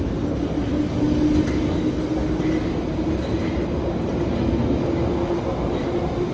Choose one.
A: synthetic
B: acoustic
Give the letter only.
B